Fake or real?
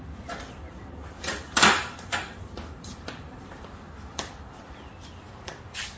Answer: fake